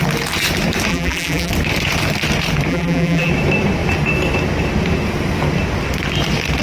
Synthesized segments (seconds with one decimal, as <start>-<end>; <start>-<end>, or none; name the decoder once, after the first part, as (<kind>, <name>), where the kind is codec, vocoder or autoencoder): 0.9-1.5 (vocoder, BigVGAN v2); 2.7-3.3